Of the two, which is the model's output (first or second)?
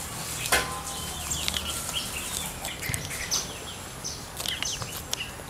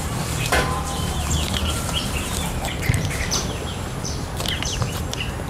second